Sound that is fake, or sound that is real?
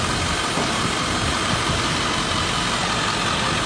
real